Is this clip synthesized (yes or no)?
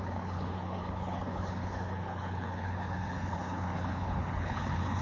yes